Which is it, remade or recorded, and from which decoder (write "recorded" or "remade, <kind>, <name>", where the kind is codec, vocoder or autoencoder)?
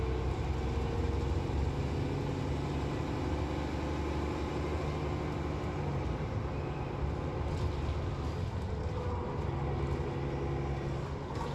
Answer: recorded